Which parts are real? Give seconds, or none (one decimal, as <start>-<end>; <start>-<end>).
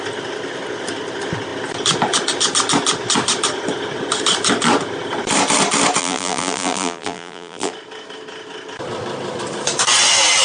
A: 0.0-6.0; 7.7-10.4